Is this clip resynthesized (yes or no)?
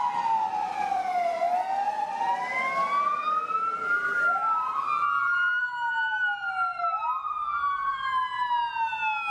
no